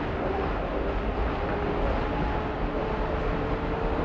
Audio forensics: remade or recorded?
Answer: recorded